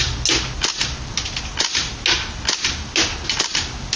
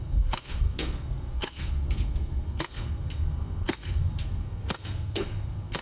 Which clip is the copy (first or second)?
second